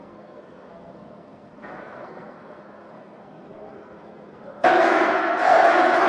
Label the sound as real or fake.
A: fake